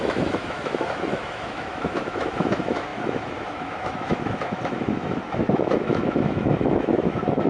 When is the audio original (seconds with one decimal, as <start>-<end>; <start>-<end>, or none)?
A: none